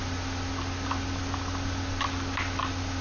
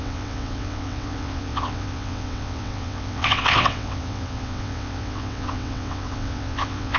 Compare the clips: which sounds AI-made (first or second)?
second